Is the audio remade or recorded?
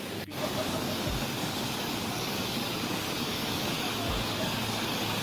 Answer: remade